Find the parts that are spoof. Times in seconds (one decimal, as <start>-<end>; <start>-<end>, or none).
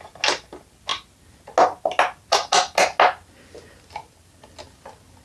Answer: none